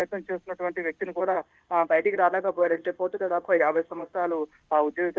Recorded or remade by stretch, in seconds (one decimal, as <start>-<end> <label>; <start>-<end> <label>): 0.0-1.2 recorded; 1.2-4.3 remade; 4.3-5.2 recorded